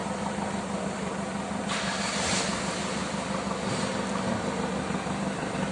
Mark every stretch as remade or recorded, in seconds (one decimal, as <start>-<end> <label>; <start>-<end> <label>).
0.0-5.7 recorded